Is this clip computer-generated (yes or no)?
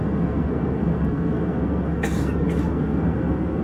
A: yes